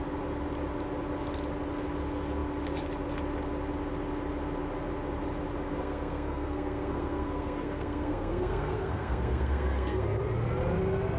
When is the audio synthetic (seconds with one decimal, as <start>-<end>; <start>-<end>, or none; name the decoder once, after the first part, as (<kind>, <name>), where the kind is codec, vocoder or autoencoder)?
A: 5.8-10.2 (codec, SNAC)